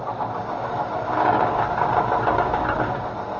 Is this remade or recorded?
remade